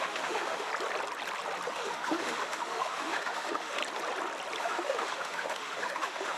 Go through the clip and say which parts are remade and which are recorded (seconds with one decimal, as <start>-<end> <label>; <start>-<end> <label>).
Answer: 0.0-0.7 remade; 0.7-1.7 recorded; 1.7-3.8 remade; 3.8-4.6 recorded; 4.6-6.4 remade